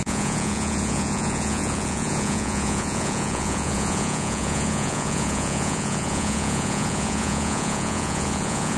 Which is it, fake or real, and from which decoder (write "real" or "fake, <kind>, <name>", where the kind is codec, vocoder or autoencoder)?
fake, vocoder, Vocos